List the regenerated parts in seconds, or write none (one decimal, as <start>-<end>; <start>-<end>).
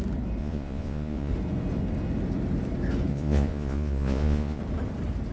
0.4-1.3; 3.1-4.6